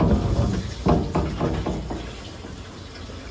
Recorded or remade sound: recorded